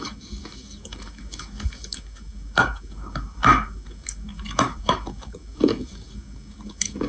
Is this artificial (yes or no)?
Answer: yes